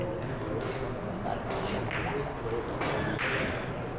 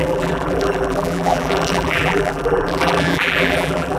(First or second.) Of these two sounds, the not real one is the second